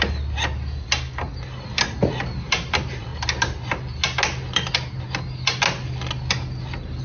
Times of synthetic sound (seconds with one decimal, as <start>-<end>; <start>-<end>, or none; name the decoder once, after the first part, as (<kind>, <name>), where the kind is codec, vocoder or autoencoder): none